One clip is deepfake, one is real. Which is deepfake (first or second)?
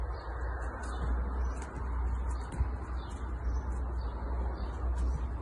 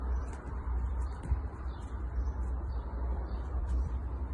second